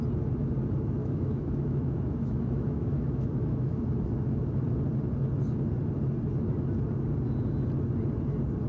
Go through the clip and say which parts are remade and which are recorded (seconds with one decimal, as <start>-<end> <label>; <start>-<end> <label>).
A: 0.0-1.0 recorded; 1.0-3.8 remade; 3.8-8.7 recorded